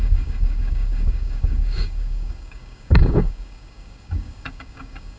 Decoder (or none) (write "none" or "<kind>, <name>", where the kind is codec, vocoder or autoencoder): codec, DAC